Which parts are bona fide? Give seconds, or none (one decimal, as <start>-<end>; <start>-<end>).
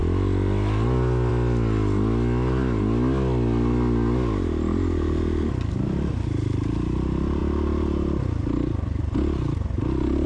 0.0-10.3